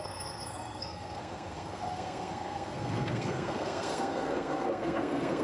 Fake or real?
fake